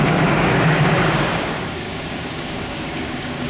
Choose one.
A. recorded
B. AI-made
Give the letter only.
B